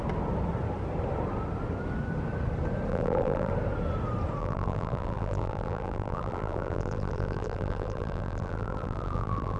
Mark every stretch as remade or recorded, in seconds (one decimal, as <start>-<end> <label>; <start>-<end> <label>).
0.0-2.9 recorded; 2.9-3.5 remade; 3.5-4.4 recorded; 4.4-9.6 remade